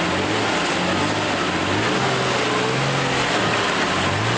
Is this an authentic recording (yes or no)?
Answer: yes